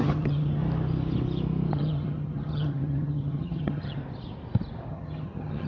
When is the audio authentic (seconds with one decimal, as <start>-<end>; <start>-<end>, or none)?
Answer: 0.6-1.7; 4.0-4.9